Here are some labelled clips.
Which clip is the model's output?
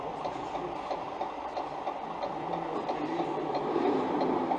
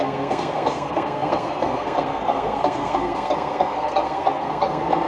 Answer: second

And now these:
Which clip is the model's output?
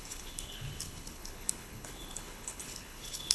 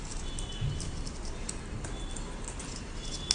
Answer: first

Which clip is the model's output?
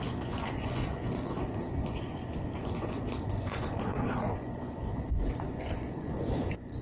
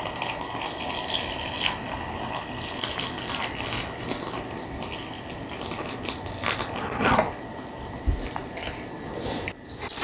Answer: first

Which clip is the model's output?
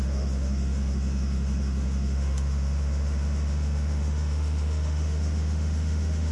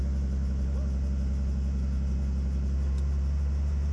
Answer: first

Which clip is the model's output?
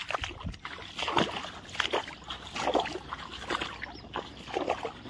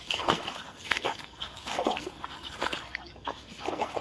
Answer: second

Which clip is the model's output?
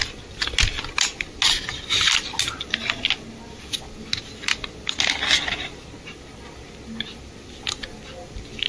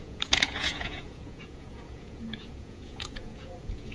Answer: second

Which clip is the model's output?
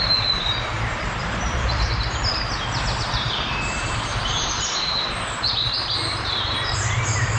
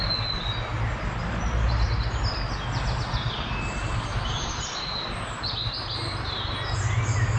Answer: first